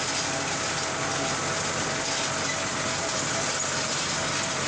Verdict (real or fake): real